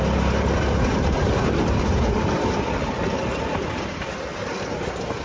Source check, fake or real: real